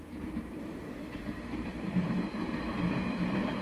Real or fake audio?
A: fake